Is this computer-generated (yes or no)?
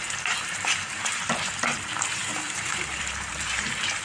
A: yes